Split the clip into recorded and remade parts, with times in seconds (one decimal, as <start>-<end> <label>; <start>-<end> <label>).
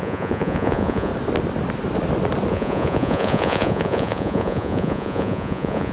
0.0-1.1 remade; 1.1-2.5 recorded; 2.5-5.9 remade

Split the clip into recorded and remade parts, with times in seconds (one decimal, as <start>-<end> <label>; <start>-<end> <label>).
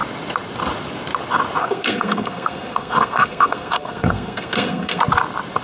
0.0-1.6 recorded; 1.6-5.0 remade; 5.0-5.6 recorded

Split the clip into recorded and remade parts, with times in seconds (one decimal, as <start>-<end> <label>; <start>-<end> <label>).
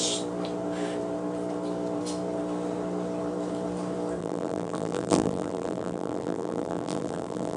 0.0-4.2 recorded; 4.2-7.6 remade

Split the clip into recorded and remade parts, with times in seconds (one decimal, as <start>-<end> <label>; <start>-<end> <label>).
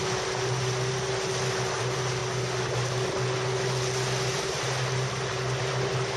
0.0-6.2 recorded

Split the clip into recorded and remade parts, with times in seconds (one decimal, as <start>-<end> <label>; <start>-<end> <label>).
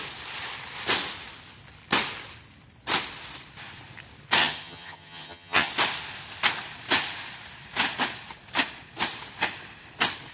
0.0-4.4 recorded; 4.4-5.7 remade; 5.7-10.3 recorded